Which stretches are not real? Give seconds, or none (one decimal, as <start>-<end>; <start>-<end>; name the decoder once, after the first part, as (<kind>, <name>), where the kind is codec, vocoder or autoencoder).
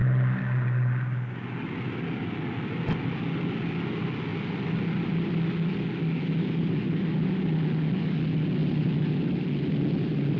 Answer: none